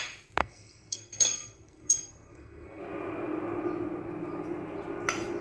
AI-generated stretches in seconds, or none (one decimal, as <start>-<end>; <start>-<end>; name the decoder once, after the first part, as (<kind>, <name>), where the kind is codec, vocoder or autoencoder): 0.4-2.8 (codec, SNAC)